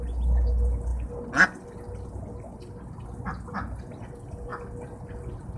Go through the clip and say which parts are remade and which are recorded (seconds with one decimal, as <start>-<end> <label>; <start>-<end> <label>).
0.0-5.6 recorded